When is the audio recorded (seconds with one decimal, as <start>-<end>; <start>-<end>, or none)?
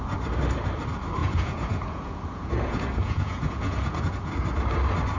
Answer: 0.0-1.2; 4.3-5.2